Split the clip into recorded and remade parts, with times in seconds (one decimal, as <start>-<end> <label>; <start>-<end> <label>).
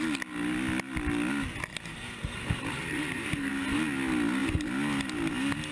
0.0-1.9 recorded; 1.9-3.5 remade; 3.5-5.7 recorded